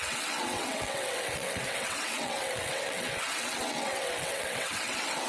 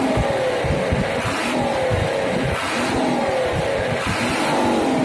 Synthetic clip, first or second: first